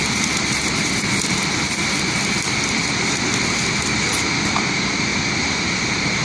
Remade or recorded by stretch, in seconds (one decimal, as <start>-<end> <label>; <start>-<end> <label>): 0.0-3.2 remade; 3.2-5.1 recorded; 5.1-6.2 remade